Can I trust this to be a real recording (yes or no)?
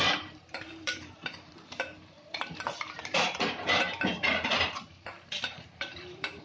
no